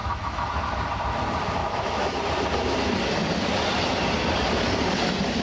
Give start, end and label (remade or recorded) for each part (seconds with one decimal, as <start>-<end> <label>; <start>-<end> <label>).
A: 0.0-0.5 remade; 0.5-1.6 recorded; 1.6-2.2 remade; 2.2-5.4 recorded